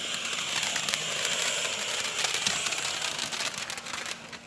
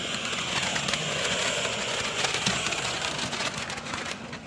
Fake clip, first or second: second